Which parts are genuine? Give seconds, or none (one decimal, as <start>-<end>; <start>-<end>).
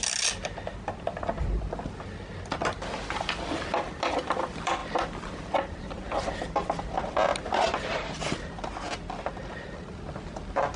0.0-10.8